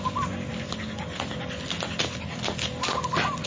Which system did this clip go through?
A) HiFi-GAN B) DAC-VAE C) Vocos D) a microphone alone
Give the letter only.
D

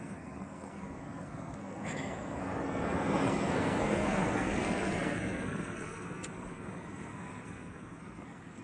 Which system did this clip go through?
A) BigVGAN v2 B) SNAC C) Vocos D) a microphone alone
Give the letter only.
B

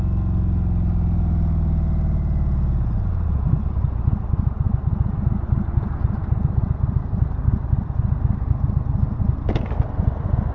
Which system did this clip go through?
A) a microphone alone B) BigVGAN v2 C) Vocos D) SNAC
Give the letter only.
A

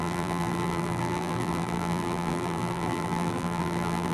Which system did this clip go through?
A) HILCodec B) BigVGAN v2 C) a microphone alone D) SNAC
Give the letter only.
B